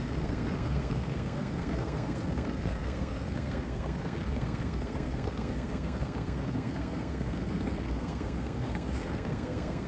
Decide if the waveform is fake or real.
fake